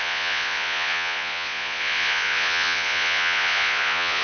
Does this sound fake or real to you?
fake